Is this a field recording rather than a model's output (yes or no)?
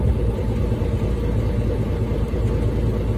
yes